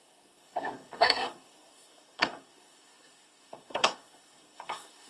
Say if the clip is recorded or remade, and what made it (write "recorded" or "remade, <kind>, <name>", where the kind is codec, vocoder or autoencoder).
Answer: remade, codec, SNAC